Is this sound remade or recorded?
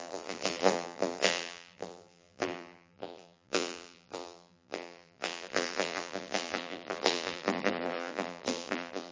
remade